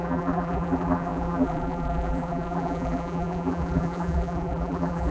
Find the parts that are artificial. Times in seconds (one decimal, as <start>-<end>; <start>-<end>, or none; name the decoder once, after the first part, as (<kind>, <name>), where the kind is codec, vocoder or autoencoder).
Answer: 0.0-5.1 (vocoder, BigVGAN v2)